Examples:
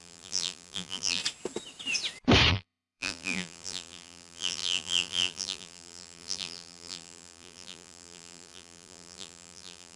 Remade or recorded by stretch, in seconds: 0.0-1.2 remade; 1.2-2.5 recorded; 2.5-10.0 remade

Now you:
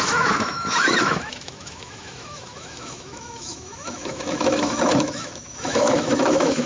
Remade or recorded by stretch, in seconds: 0.0-6.7 remade

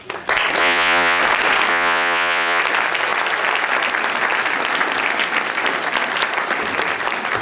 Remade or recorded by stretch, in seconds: 0.0-0.6 recorded; 0.6-1.2 remade; 1.2-1.7 recorded; 1.7-2.6 remade; 2.6-7.4 recorded

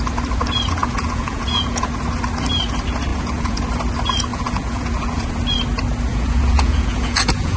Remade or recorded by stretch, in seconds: 0.0-0.8 recorded; 0.8-1.9 remade; 1.9-3.1 recorded; 3.1-3.6 remade; 3.6-4.3 recorded; 4.3-5.3 remade; 5.3-6.1 recorded; 6.1-7.6 remade

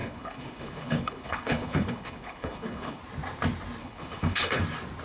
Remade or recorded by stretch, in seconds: 0.0-3.0 remade; 3.0-3.8 recorded; 3.8-4.6 remade; 4.6-5.0 recorded

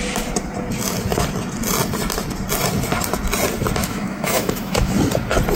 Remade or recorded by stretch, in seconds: 0.0-3.8 recorded; 3.8-4.9 remade; 4.9-5.6 recorded

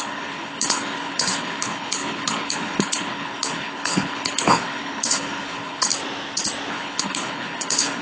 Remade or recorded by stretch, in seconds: 0.0-5.9 remade; 5.9-6.7 recorded; 6.7-8.0 remade